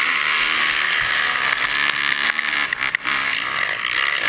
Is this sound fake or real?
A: real